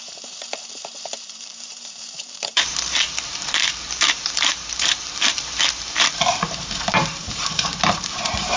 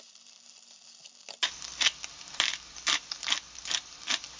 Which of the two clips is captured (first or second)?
second